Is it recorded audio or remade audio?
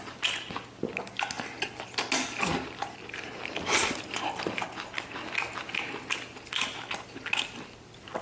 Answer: recorded